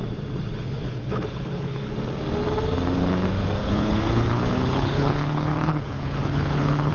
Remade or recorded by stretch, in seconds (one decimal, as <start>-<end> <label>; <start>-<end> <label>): 0.0-0.5 recorded; 0.5-1.9 remade; 1.9-3.6 recorded; 3.6-6.9 remade